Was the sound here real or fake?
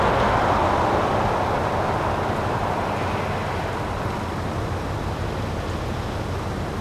real